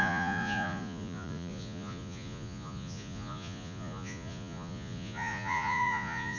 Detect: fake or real fake